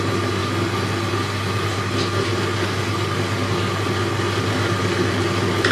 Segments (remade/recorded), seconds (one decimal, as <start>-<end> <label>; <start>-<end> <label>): 0.0-5.7 recorded